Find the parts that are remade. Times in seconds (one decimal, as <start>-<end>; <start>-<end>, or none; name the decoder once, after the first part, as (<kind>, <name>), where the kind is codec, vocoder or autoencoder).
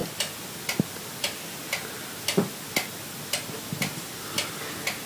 none